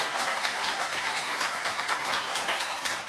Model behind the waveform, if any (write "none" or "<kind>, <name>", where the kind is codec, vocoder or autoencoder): codec, SNAC